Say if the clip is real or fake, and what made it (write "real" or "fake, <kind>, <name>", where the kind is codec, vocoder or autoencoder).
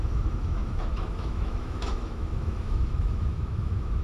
fake, autoencoder, DAC-VAE